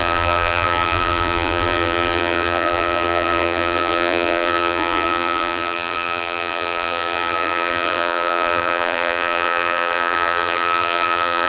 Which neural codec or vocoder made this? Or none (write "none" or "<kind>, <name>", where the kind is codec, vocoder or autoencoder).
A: vocoder, BigVGAN v2